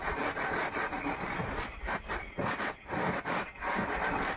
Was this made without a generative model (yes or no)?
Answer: yes